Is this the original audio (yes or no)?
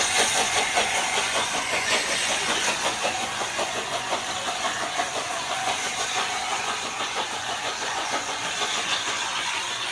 no